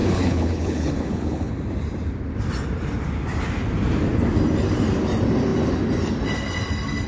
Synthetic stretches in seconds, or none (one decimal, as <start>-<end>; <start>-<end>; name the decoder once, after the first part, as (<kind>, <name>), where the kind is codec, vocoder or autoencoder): 0.0-1.5 (codec, HILCodec)